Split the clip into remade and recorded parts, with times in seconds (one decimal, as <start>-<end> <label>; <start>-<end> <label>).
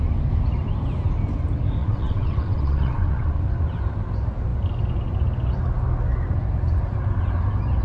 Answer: 0.0-1.8 recorded; 1.8-3.4 remade; 3.4-7.8 recorded